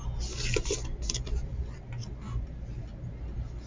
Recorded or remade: recorded